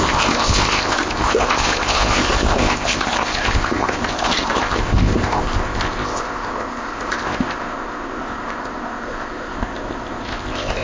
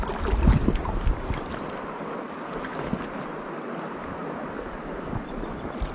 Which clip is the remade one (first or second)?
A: first